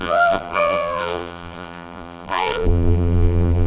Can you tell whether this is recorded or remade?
remade